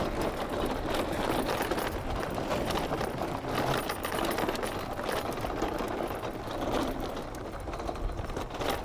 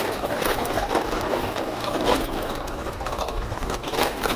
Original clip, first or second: first